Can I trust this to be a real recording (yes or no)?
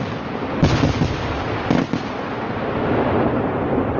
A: yes